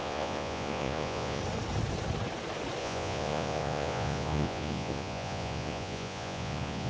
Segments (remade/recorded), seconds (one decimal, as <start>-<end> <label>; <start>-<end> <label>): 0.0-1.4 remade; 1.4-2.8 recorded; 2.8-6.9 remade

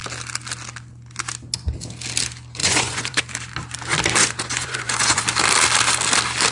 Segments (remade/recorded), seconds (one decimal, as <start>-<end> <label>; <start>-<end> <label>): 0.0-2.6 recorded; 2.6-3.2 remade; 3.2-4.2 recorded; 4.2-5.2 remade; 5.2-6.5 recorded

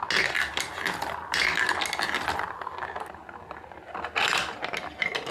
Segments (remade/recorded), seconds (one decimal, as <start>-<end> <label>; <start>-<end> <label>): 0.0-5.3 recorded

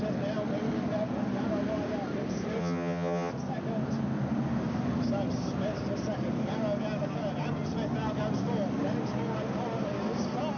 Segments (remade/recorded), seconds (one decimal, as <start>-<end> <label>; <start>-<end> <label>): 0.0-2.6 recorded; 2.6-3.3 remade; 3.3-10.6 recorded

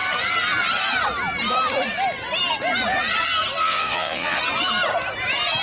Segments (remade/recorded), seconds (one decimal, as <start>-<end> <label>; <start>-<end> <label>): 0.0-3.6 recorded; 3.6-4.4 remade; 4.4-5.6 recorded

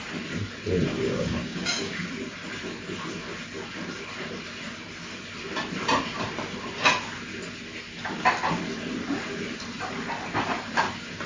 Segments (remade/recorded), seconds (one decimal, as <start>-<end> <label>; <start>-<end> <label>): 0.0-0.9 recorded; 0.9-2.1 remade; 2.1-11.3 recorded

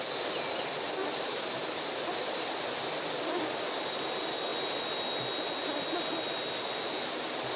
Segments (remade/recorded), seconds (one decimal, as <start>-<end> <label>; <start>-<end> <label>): 0.0-7.6 recorded

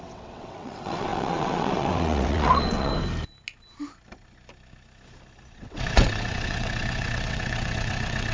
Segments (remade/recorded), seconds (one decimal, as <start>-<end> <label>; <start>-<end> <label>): 0.0-2.9 remade; 2.9-5.5 recorded; 5.5-8.3 remade